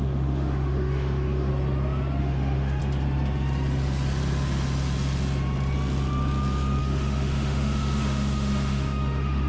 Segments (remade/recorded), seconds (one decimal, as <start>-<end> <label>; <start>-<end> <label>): 0.0-1.5 remade; 1.5-2.2 recorded; 2.2-2.8 remade; 2.8-6.8 recorded; 6.8-9.5 remade